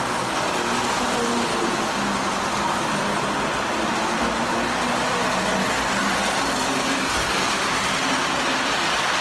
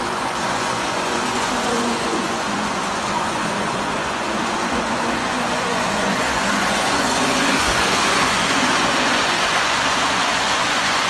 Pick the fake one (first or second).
second